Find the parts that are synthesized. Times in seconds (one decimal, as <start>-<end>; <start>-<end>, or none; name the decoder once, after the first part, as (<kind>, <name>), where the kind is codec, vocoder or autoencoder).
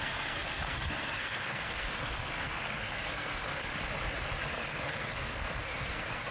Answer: 0.0-3.7 (codec, SNAC); 4.5-6.3